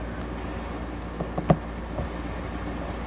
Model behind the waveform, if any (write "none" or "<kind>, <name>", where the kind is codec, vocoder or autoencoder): none